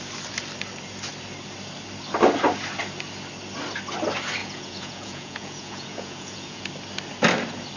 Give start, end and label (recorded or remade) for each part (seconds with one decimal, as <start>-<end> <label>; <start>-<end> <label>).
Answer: 0.0-4.4 recorded; 4.4-6.7 remade; 6.7-7.8 recorded